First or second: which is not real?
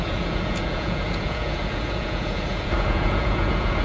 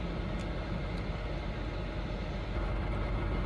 first